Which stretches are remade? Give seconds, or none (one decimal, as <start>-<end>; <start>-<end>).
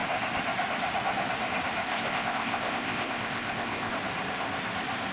1.9-3.9